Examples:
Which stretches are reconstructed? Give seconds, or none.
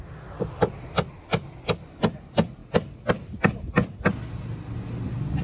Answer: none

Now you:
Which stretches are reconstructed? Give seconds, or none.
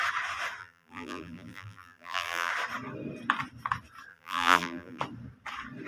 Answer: 0.6-2.5 (vocoder, BigVGAN v2); 4.1-5.0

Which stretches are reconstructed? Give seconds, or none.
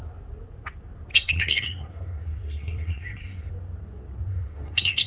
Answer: 1.1-3.5 (codec, SNAC); 4.3-5.1